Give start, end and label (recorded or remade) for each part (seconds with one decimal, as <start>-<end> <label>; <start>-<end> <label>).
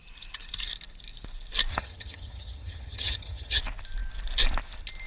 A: 0.0-1.7 recorded; 1.7-3.6 remade; 3.6-5.1 recorded